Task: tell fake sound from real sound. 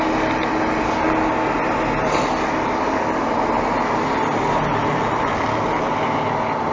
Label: real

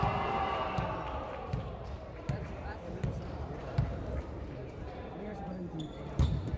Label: fake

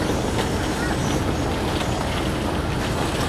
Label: real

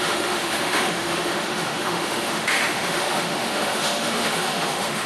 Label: fake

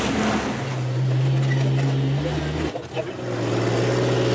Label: real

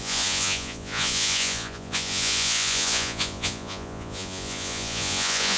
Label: fake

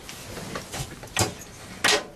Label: real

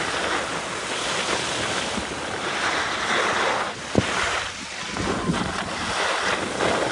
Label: real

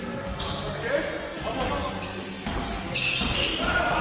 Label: real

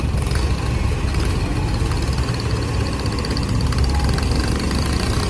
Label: real